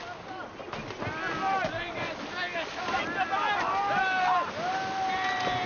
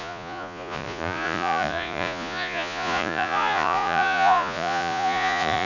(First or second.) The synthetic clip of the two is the second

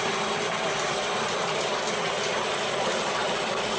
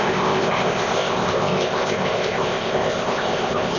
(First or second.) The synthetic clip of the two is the second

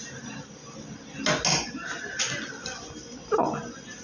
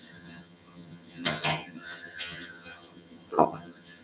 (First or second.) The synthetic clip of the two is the second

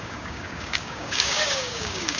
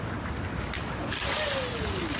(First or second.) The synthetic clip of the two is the first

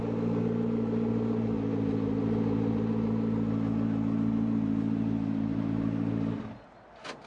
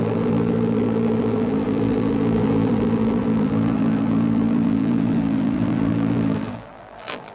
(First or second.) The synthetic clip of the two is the second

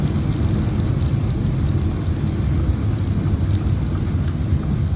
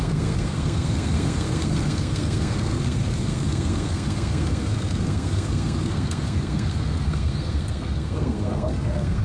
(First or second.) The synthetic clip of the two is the second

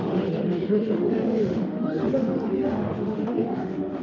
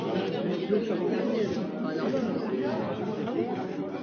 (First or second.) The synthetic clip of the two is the first